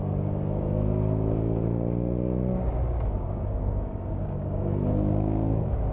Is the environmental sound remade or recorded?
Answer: remade